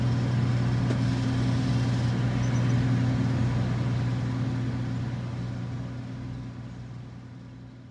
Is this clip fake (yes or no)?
no